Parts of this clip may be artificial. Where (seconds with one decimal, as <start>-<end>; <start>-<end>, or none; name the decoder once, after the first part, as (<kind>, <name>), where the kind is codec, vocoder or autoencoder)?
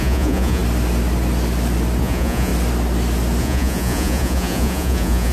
0.0-0.6 (vocoder, Vocos); 2.0-2.5; 3.4-5.3